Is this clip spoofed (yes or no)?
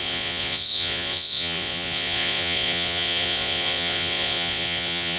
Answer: yes